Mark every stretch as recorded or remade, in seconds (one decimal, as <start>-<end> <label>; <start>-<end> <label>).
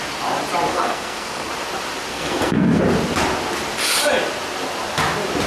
0.0-0.7 recorded; 0.7-1.5 remade; 1.5-2.1 recorded; 2.1-2.8 remade; 2.8-5.5 recorded